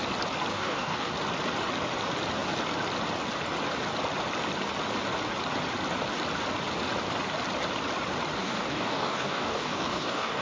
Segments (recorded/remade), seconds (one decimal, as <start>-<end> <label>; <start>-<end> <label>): 0.0-0.5 recorded; 0.5-1.1 remade; 1.1-8.4 recorded; 8.4-10.4 remade